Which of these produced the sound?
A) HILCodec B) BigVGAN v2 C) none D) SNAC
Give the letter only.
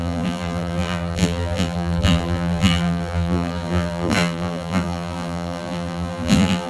B